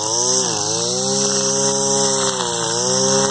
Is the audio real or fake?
real